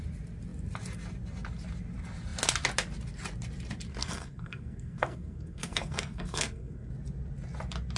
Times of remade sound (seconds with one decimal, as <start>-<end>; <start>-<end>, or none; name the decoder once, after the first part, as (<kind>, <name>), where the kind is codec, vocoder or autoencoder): 4.0-6.9 (codec, SNAC)